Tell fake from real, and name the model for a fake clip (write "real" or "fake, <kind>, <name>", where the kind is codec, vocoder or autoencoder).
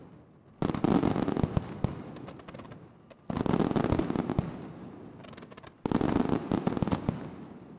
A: real